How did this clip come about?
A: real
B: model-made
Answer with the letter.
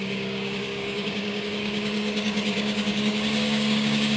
B